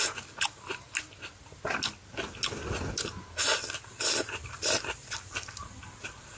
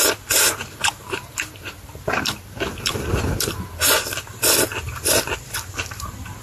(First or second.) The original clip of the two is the first